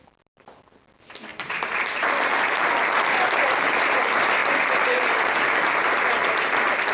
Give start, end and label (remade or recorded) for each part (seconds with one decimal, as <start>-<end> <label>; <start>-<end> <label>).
0.0-1.3 recorded; 1.3-2.5 remade; 2.5-6.9 recorded